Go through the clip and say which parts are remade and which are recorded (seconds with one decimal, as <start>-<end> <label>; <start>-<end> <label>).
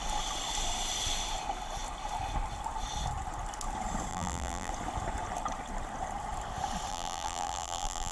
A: 0.0-4.1 recorded; 4.1-4.7 remade; 4.7-6.9 recorded; 6.9-8.1 remade